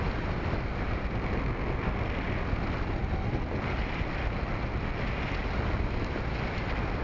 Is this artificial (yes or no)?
no